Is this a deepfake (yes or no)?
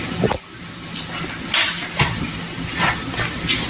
no